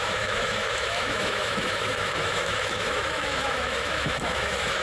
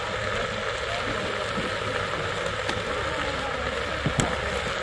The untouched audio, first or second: second